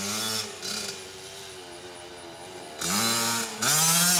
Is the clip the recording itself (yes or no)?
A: yes